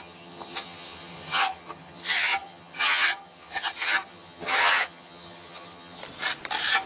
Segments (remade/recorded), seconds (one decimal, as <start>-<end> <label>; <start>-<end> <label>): 0.0-6.0 remade; 6.0-6.9 recorded